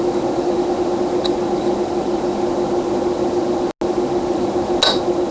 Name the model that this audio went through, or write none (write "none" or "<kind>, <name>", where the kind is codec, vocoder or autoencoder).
none